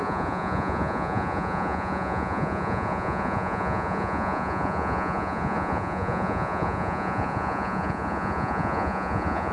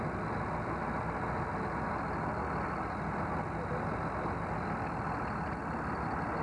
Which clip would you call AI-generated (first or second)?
first